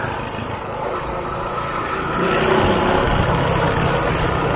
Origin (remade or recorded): recorded